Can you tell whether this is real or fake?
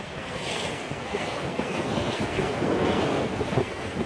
fake